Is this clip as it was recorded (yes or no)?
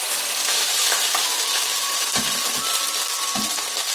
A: no